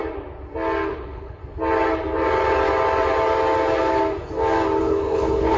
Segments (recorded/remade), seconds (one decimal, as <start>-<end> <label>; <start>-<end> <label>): 0.0-0.9 recorded; 0.9-1.4 remade; 1.4-4.8 recorded; 4.8-5.6 remade